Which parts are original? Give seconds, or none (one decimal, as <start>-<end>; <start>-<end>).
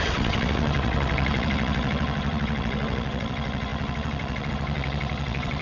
none